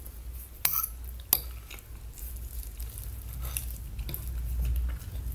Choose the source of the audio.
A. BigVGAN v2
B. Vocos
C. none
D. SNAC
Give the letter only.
C